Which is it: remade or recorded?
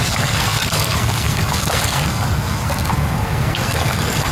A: remade